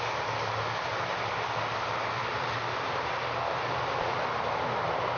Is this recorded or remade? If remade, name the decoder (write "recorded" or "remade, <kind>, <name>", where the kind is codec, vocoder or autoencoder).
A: recorded